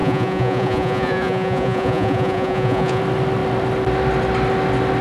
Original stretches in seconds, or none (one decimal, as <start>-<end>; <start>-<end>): 3.0-5.0